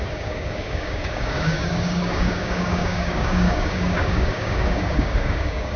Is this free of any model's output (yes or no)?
no